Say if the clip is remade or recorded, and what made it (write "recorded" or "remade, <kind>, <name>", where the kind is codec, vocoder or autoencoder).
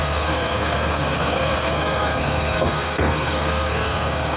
remade, codec, SNAC